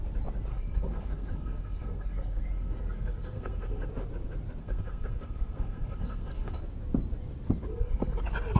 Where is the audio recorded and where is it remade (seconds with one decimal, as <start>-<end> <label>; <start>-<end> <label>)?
0.0-0.5 recorded; 0.5-3.9 remade; 3.9-4.6 recorded; 4.6-6.6 remade; 6.6-7.7 recorded; 7.7-8.2 remade; 8.2-8.6 recorded